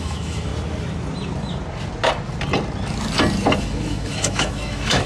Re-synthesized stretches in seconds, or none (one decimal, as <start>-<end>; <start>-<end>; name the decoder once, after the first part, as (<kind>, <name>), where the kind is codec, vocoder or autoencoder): 0.0-0.5 (autoencoder, DAC-VAE); 3.6-5.1